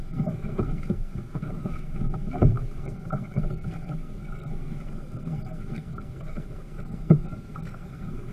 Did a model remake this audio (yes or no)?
yes